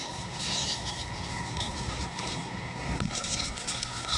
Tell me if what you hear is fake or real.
fake